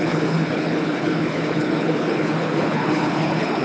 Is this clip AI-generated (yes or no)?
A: yes